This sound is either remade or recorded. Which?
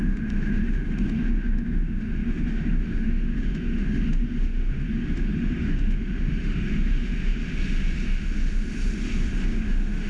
remade